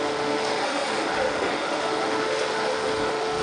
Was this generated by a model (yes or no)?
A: yes